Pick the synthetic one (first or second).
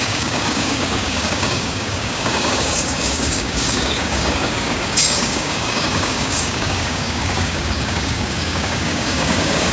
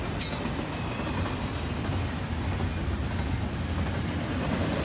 first